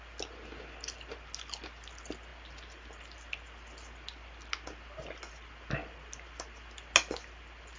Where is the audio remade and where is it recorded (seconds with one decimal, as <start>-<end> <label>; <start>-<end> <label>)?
0.0-7.8 recorded